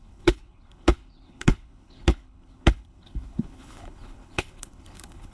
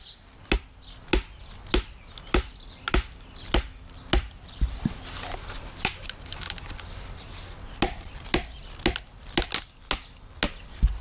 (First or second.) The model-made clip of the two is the first